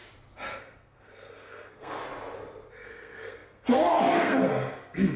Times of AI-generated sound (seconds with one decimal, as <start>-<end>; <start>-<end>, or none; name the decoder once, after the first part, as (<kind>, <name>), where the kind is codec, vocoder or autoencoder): 0.6-2.0 (codec, SNAC); 2.7-5.2

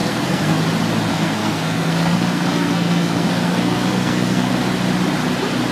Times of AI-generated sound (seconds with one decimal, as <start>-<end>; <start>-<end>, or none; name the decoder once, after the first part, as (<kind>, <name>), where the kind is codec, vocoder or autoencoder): 0.0-0.6 (codec, SNAC); 1.1-4.5

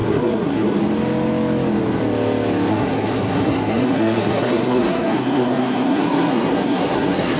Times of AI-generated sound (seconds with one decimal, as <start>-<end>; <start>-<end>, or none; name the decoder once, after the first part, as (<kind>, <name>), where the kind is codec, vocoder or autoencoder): 0.0-0.8 (codec, SNAC); 2.7-7.4

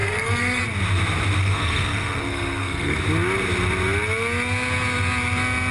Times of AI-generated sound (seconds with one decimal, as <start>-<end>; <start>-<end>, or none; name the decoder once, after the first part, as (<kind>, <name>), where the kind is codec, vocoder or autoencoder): 0.0-0.6 (codec, SNAC); 1.4-3.0

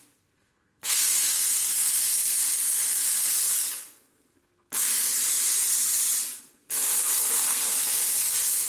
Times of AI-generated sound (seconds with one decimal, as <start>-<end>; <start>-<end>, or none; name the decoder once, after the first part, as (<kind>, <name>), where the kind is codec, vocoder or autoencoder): 0.0-4.9 (codec, SNAC); 6.4-8.7

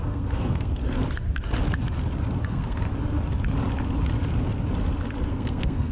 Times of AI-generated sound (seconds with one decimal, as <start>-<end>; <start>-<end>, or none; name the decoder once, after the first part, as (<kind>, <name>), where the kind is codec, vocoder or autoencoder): 0.0-0.8 (codec, SNAC); 2.4-2.9; 5.3-5.9

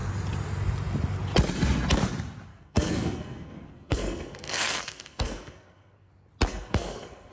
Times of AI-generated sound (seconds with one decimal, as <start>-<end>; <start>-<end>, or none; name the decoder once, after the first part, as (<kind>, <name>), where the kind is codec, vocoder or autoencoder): 2.5-6.1 (codec, SNAC); 6.5-7.3